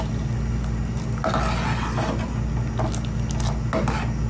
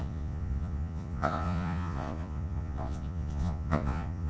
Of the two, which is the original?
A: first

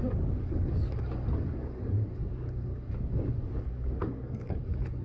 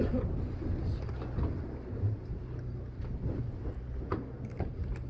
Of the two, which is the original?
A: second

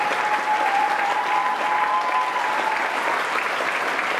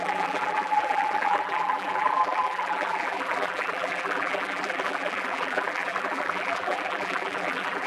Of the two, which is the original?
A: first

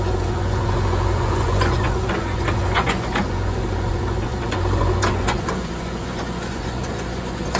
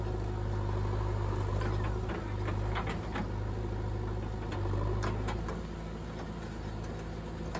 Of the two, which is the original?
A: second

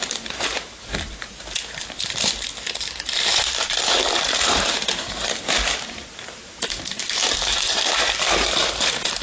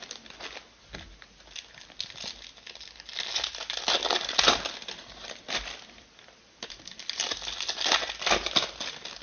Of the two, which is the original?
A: second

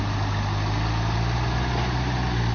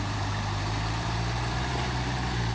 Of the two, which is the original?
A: first